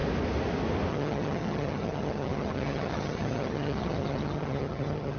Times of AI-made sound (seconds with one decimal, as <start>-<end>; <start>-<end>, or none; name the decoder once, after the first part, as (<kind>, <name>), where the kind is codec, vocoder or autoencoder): 0.9-5.2 (vocoder, HiFi-GAN)